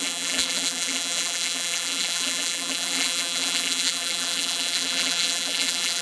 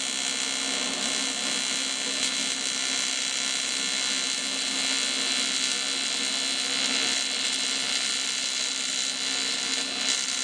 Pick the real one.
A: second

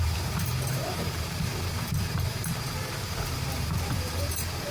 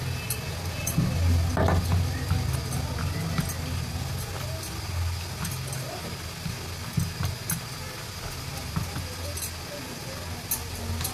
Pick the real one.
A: second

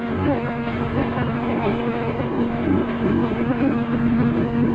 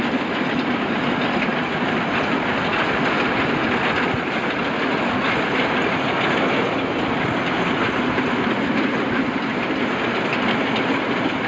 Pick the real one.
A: second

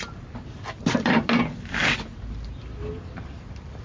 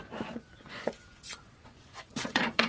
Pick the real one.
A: first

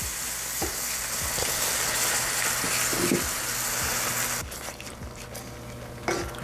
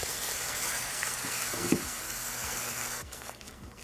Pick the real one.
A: first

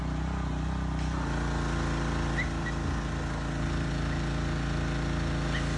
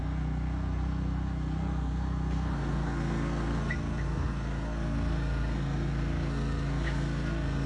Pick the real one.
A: first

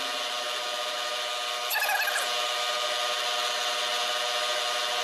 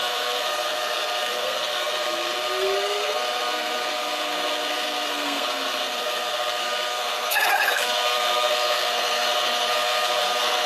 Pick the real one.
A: first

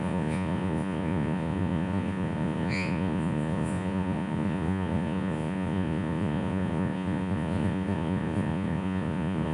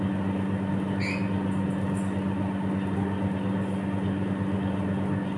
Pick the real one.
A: second